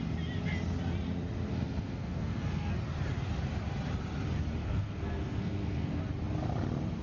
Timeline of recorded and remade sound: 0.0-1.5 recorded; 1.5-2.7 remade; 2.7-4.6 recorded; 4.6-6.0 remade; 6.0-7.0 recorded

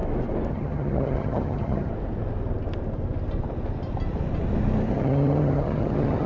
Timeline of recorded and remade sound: 0.0-0.5 recorded; 0.5-1.9 remade; 1.9-4.9 recorded; 4.9-6.3 remade

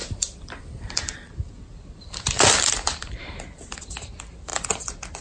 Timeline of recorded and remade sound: 0.0-5.2 remade

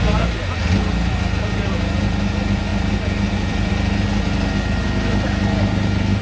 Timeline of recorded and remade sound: 0.0-2.7 recorded; 2.7-3.7 remade; 3.7-6.2 recorded

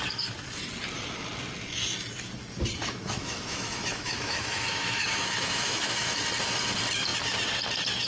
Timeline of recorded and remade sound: 0.0-2.8 recorded; 2.8-6.2 remade; 6.2-8.1 recorded

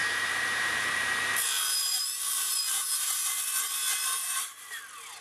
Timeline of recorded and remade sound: 0.0-3.1 remade; 3.1-4.2 recorded; 4.2-4.8 remade; 4.8-5.2 recorded